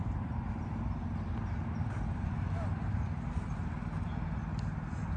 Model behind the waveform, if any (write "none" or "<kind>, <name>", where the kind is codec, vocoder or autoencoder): none